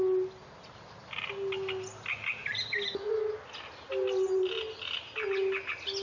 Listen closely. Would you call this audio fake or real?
real